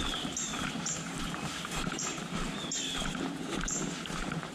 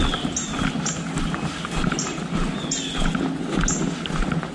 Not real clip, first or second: first